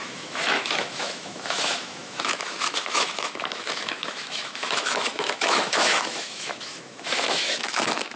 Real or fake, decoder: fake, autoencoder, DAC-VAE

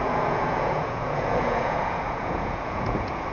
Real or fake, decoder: fake, vocoder, Vocos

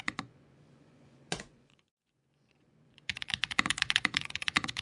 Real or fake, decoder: fake, vocoder, Vocos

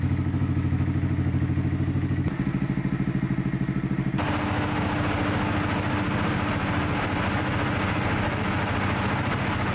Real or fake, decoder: real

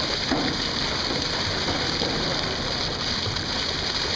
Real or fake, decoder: real